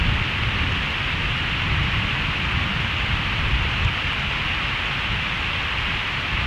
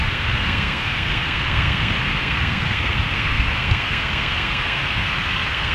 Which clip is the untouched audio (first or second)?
first